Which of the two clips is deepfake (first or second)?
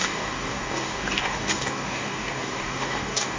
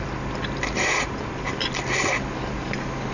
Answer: first